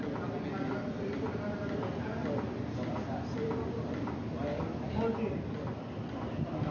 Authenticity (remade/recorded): recorded